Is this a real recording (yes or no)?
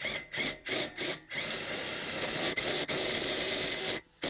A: yes